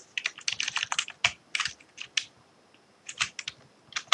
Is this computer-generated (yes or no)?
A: no